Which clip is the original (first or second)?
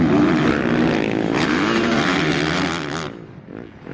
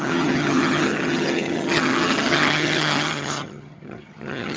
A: first